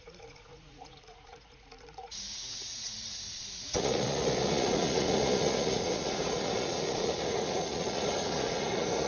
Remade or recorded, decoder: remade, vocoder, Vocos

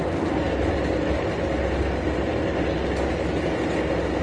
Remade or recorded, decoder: recorded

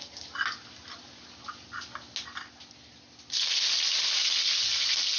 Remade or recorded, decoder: recorded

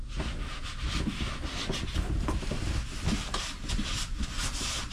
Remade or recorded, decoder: recorded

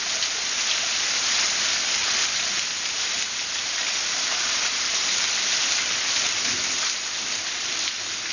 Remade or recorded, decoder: recorded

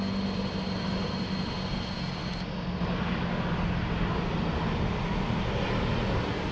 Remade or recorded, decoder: recorded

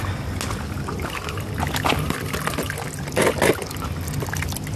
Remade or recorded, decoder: recorded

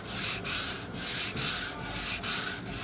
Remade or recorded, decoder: recorded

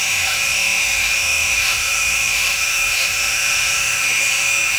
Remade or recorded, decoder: remade, autoencoder, DAC-VAE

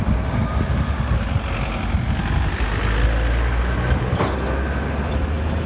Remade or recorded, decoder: recorded